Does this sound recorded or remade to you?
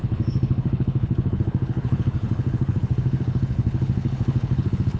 remade